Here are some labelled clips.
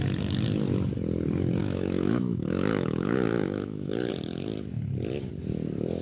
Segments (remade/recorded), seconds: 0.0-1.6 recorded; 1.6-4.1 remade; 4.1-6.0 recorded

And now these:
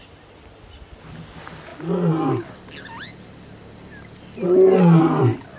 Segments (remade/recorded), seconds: 0.0-1.7 remade; 1.7-5.0 recorded; 5.0-5.6 remade

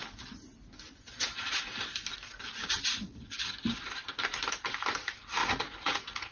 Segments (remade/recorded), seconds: 0.0-5.4 recorded; 5.4-6.3 remade

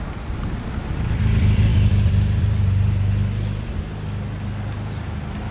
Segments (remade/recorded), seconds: 0.0-5.5 recorded